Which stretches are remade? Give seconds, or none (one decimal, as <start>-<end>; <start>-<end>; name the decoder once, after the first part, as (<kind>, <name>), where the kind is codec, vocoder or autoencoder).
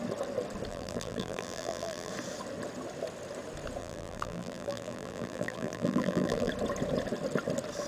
0.7-2.1 (vocoder, BigVGAN v2); 3.8-6.5